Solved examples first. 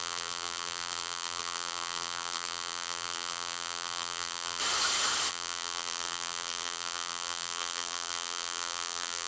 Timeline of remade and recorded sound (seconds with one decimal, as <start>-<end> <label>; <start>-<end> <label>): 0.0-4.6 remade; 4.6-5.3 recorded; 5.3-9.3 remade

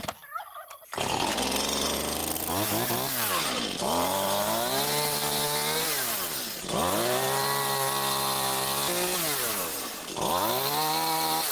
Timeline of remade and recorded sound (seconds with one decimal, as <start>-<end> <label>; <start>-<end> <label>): 0.0-11.5 recorded

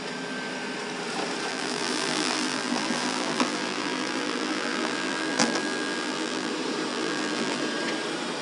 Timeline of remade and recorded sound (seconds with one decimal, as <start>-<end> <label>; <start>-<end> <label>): 0.0-1.5 recorded; 1.5-6.5 remade; 6.5-6.9 recorded; 6.9-7.6 remade; 7.6-8.4 recorded

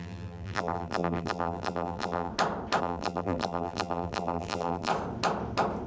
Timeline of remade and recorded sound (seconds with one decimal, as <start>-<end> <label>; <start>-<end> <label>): 0.0-2.3 remade; 2.3-2.8 recorded; 2.8-4.9 remade; 4.9-5.9 recorded

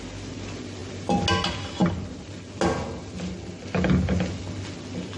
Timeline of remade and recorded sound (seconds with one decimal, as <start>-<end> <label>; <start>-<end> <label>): 0.0-5.2 recorded

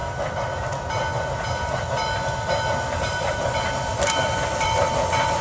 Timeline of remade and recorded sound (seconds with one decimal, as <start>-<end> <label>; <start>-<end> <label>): 0.0-3.2 recorded; 3.2-5.4 remade

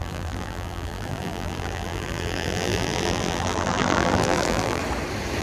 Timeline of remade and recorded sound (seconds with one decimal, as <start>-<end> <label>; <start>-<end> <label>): 0.0-4.8 remade; 4.8-5.4 recorded